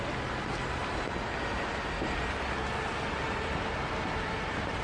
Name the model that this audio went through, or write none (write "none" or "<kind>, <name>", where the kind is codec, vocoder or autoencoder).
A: none